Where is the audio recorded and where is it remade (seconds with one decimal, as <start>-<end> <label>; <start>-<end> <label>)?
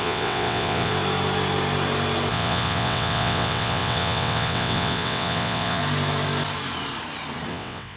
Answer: 0.0-0.9 remade; 0.9-2.3 recorded; 2.3-5.8 remade; 5.8-7.5 recorded; 7.5-8.0 remade